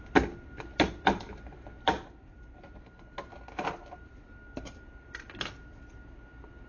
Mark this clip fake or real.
real